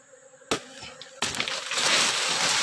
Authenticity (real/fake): real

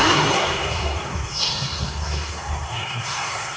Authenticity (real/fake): fake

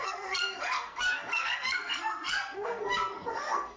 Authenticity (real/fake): fake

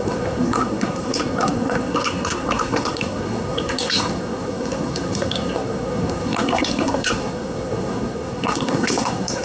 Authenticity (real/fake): fake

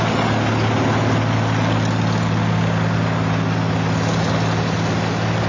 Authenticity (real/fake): real